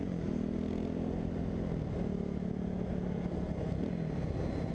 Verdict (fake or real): real